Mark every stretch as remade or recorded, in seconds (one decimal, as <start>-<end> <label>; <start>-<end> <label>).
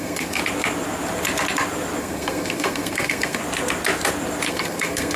0.0-0.4 remade; 0.4-2.0 recorded; 2.0-3.4 remade; 3.4-4.5 recorded; 4.5-5.2 remade